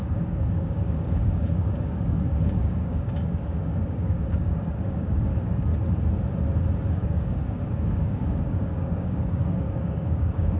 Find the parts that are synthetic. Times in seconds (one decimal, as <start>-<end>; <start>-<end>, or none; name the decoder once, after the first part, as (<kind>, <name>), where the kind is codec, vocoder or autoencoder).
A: 0.0-5.7 (codec, DAC); 6.9-10.6